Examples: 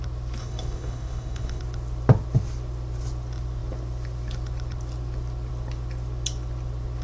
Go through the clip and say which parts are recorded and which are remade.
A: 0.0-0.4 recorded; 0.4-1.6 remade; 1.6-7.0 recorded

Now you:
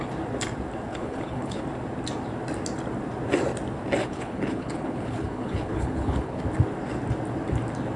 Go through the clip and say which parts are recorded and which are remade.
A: 0.0-0.9 recorded; 0.9-1.6 remade; 1.6-4.0 recorded; 4.0-6.4 remade; 6.4-8.0 recorded

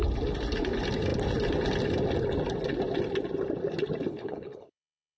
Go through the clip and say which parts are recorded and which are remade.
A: 0.0-4.1 recorded; 4.1-5.2 remade

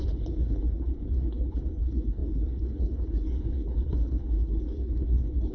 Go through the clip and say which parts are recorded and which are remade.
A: 0.0-5.5 remade

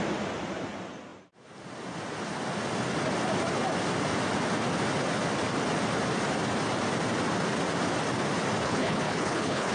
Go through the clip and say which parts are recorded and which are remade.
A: 0.0-8.6 recorded; 8.6-9.7 remade

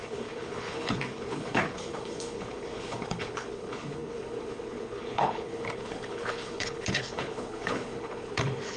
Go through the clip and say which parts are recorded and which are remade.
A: 0.0-8.8 remade